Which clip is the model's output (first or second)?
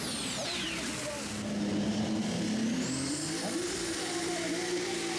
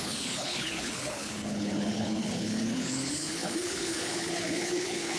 second